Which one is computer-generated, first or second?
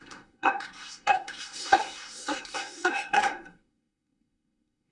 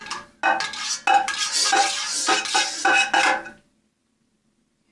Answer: first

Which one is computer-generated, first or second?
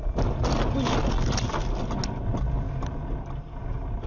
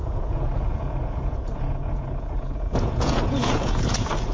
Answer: second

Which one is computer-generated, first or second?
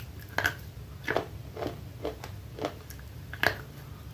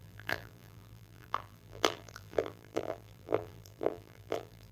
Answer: second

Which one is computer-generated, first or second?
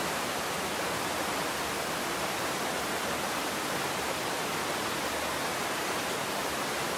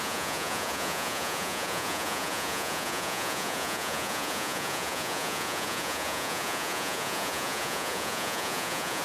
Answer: second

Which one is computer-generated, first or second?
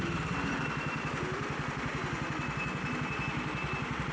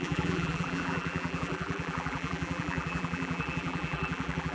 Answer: second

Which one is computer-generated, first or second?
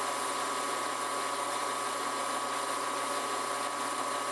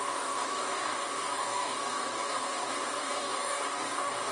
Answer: second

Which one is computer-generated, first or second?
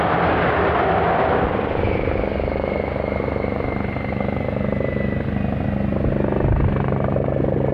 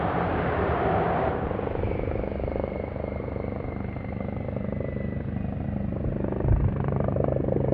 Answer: second